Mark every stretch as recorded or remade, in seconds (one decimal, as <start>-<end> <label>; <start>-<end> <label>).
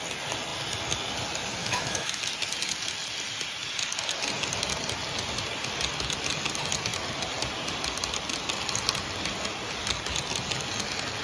0.0-1.6 recorded; 1.6-2.2 remade; 2.2-11.2 recorded